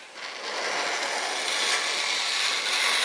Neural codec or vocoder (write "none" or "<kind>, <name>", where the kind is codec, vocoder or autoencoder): none